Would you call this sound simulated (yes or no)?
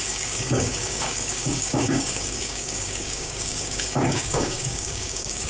yes